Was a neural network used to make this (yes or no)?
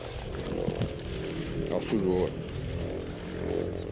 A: yes